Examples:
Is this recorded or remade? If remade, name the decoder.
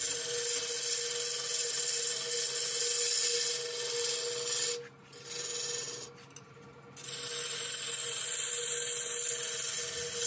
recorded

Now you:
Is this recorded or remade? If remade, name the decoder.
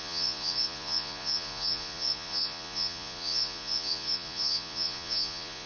remade, vocoder, Vocos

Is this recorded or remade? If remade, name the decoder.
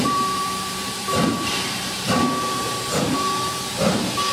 remade, vocoder, BigVGAN v2